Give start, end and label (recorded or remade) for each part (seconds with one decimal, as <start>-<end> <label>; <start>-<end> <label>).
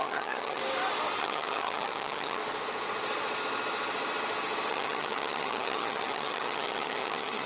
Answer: 0.0-0.6 remade; 0.6-1.2 recorded; 1.2-2.4 remade; 2.4-4.7 recorded; 4.7-7.5 remade